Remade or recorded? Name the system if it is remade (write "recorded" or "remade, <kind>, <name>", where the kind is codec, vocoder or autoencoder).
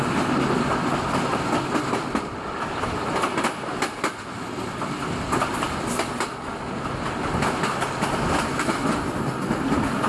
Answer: recorded